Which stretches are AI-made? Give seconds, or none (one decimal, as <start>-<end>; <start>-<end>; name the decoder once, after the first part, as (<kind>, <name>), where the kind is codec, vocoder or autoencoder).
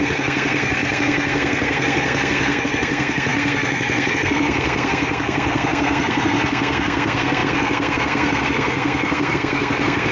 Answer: 0.0-10.1 (codec, SNAC)